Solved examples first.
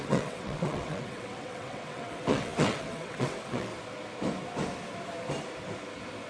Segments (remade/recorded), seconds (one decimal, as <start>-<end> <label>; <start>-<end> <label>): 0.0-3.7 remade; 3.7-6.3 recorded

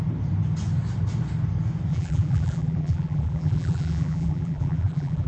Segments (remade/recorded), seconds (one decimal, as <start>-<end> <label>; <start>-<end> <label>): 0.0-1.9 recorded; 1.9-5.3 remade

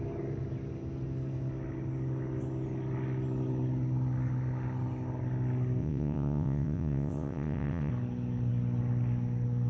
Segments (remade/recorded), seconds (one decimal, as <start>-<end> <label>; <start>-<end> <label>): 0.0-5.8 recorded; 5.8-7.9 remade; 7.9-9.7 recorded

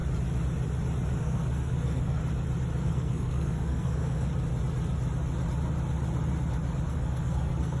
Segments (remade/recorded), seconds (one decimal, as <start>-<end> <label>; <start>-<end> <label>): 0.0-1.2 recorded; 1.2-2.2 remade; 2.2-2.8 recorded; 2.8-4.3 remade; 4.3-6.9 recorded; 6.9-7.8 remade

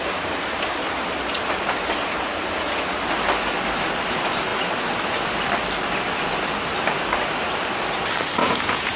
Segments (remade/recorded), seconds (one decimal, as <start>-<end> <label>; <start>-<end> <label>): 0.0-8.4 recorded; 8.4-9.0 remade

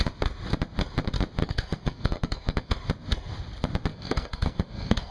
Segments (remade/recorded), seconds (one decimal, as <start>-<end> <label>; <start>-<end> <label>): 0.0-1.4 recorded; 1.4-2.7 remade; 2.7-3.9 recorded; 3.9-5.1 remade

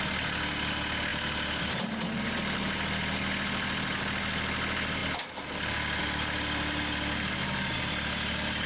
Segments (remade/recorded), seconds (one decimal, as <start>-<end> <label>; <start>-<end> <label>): 0.0-8.7 recorded